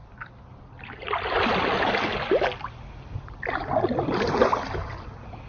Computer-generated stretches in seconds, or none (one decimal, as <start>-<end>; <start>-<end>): none

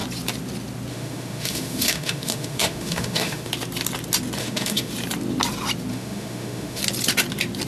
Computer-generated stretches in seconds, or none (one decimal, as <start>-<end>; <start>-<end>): 0.9-3.5; 4.4-4.9; 5.9-6.8

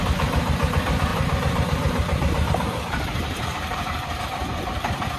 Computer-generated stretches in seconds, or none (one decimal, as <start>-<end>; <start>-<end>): 0.0-5.2

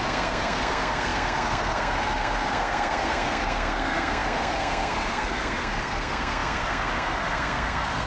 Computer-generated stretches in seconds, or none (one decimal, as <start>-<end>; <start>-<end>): 0.0-8.1

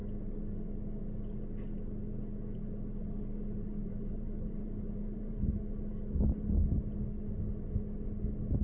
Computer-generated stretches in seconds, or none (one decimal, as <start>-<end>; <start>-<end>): 3.8-5.6

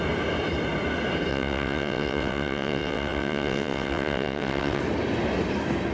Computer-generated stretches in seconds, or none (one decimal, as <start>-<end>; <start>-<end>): 1.3-4.8